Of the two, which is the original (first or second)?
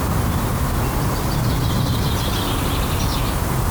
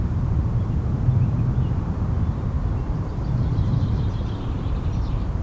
first